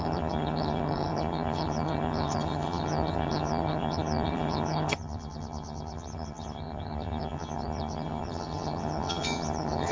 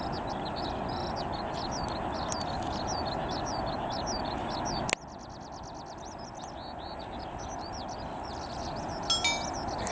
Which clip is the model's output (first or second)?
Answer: first